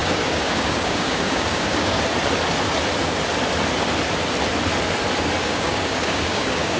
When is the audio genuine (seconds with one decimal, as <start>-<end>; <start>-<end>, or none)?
2.0-5.4